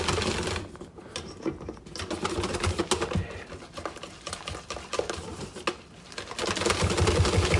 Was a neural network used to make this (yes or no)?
no